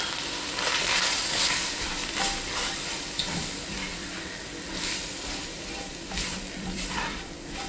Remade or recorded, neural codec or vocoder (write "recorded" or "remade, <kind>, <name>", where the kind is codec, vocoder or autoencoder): remade, vocoder, BigVGAN v2